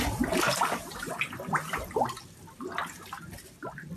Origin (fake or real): real